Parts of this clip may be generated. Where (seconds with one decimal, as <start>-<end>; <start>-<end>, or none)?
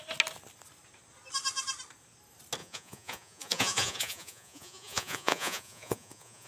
2.6-6.5